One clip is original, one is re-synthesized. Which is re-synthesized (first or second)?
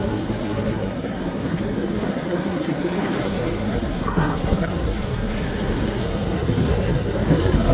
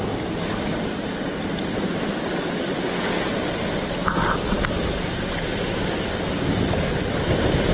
first